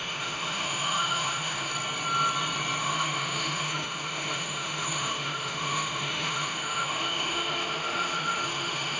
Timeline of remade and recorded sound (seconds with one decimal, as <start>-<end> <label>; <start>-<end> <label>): 0.0-1.7 remade; 1.7-2.8 recorded; 2.8-9.0 remade